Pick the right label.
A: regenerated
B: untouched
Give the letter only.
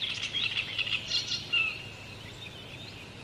B